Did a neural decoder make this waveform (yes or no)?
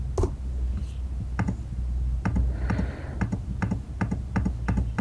no